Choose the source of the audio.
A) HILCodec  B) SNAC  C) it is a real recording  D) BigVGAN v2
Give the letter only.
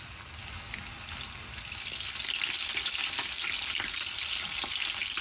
C